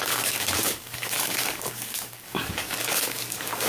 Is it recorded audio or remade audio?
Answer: remade